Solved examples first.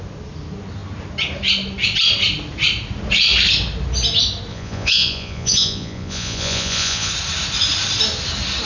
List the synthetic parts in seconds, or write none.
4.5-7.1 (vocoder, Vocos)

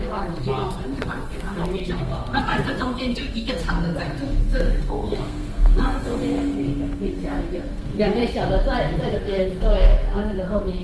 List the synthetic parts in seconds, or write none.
0.0-8.2 (codec, SNAC); 9.1-10.8

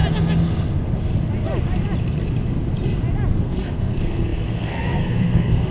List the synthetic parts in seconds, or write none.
3.4-5.7 (codec, SNAC)

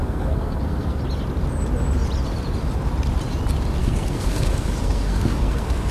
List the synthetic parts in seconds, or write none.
0.0-1.0 (codec, SNAC); 3.8-5.9